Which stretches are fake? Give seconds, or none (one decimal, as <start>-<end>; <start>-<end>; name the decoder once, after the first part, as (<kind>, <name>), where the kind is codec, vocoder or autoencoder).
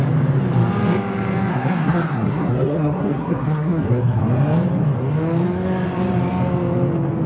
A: 1.5-4.2 (codec, SNAC)